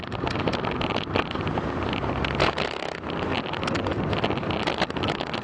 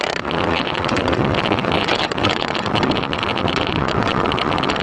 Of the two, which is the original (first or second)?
first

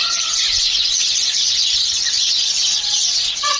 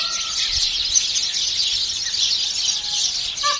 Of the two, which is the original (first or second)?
second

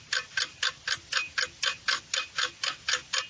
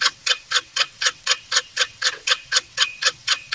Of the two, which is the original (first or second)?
first